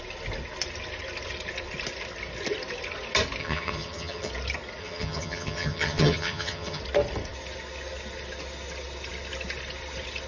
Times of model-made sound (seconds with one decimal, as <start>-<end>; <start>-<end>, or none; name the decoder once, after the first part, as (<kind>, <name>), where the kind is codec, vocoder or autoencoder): 3.4-4.3 (vocoder, HiFi-GAN); 4.8-6.8